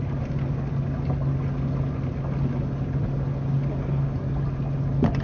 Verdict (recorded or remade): recorded